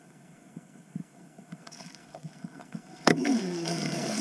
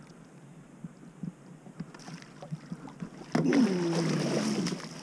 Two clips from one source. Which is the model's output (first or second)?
first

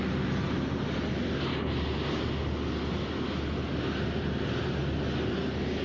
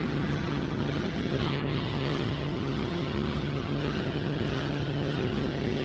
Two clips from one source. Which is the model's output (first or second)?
second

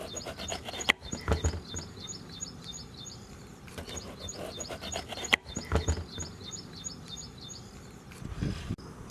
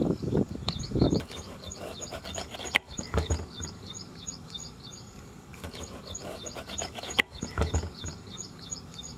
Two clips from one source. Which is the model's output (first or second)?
second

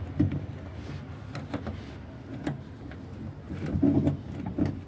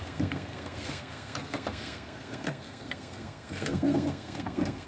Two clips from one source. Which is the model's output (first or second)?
second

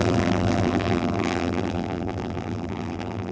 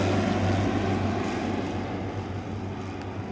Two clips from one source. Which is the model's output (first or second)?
first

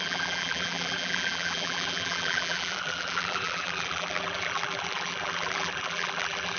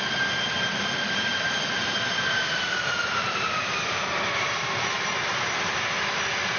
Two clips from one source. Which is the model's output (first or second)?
first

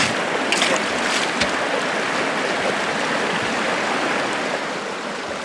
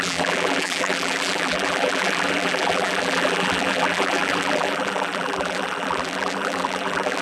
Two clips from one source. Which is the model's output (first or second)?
second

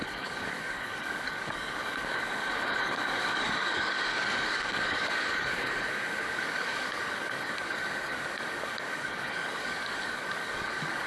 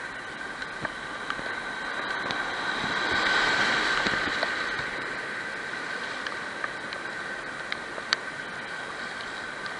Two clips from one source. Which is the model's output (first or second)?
first